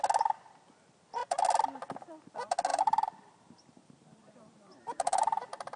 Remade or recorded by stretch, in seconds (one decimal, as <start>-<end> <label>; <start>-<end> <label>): 0.0-2.7 recorded; 2.7-5.8 remade